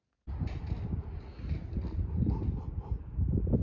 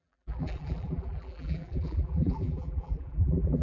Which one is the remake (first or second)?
second